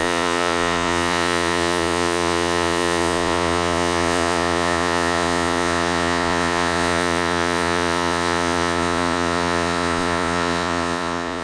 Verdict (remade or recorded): remade